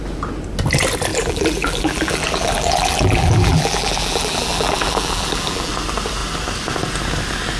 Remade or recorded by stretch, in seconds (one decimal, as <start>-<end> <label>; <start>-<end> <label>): 0.0-1.1 recorded; 1.1-5.7 remade; 5.7-7.6 recorded